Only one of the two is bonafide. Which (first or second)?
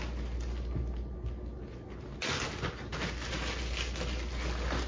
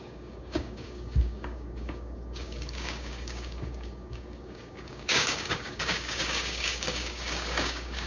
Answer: first